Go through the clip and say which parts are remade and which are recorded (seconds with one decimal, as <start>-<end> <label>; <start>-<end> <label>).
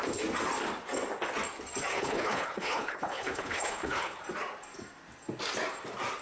0.0-1.9 recorded; 1.9-4.2 remade; 4.2-6.2 recorded